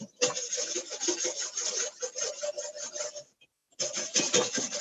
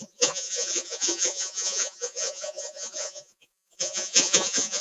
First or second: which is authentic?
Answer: first